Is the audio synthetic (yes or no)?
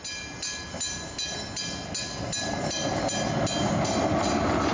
no